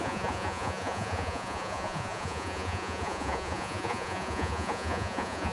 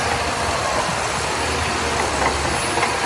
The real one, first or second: second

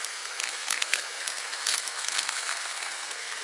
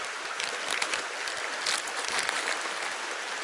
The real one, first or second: second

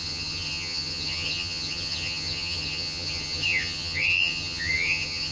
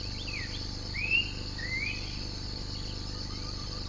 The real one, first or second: second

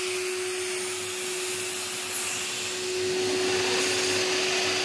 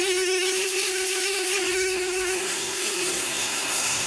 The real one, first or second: first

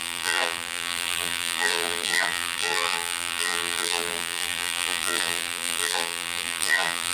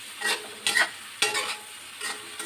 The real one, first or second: second